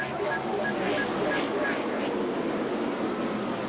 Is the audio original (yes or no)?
yes